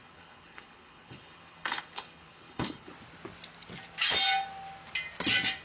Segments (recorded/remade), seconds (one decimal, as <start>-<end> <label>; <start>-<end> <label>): 0.0-2.9 remade; 2.9-5.6 recorded